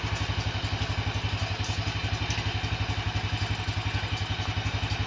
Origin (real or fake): real